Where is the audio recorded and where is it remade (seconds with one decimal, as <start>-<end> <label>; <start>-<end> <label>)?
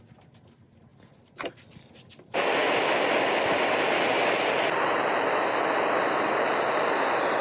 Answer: 0.0-7.4 recorded